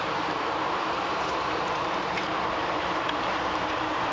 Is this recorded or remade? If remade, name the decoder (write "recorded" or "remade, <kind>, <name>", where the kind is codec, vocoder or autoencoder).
remade, vocoder, BigVGAN v2